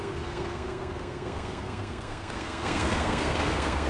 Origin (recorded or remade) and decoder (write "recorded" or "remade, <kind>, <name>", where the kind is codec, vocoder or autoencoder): remade, codec, SNAC